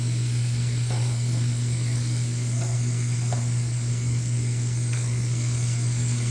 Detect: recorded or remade remade